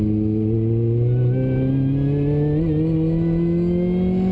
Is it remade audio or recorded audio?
recorded